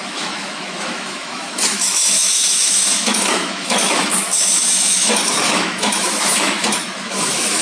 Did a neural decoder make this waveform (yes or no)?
yes